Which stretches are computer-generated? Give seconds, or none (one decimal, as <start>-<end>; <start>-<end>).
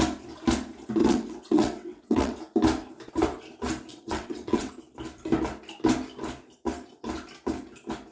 1.0-2.4; 3.9-4.7